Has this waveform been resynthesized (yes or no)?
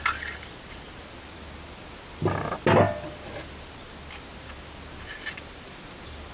no